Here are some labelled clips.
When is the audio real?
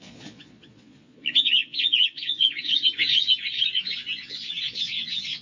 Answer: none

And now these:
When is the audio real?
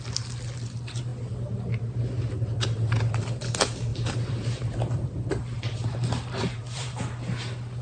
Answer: 0.0-3.9; 7.2-7.8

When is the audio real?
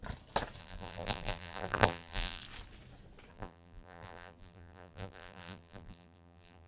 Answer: 0.0-0.6; 2.4-3.3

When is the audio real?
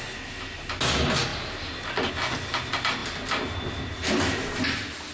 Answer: 0.0-5.1